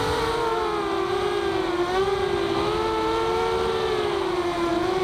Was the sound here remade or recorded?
recorded